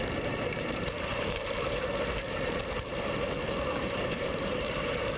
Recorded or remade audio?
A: remade